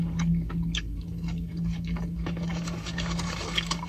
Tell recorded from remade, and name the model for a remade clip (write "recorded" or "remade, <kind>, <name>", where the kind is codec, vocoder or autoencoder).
remade, codec, DAC